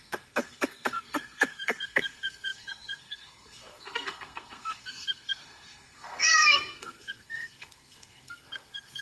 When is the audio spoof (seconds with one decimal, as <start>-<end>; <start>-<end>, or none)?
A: 0.0-9.0

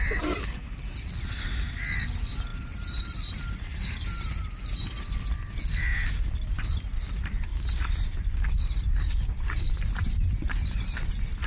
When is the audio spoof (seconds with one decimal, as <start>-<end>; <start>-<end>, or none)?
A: 2.5-4.4; 7.5-11.1

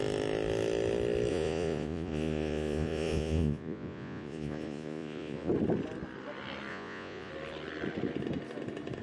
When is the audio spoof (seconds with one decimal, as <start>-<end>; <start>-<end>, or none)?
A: 1.3-5.5; 6.7-7.3

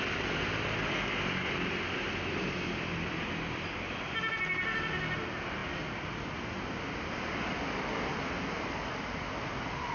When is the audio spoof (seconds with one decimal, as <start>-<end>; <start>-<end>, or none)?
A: none

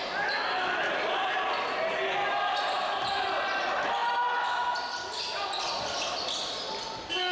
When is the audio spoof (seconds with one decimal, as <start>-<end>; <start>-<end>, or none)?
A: none

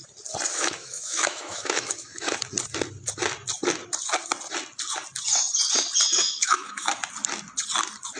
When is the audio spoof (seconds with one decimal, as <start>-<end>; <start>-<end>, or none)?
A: 0.5-2.4; 6.1-6.9